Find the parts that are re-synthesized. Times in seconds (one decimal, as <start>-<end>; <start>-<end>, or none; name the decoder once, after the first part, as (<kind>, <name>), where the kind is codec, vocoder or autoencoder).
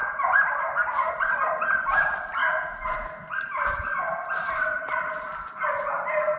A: 0.0-2.4 (vocoder, BigVGAN v2); 3.7-6.4